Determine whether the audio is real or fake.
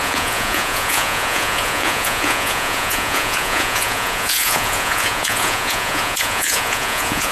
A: fake